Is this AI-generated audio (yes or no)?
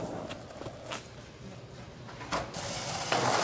no